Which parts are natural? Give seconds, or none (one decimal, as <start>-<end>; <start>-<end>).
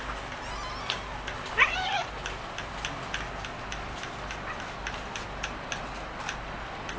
0.0-2.0; 2.7-7.0